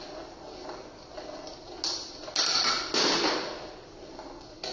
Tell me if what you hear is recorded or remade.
recorded